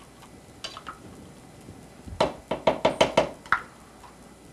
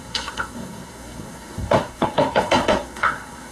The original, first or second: first